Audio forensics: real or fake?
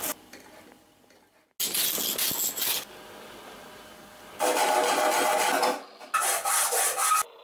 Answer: real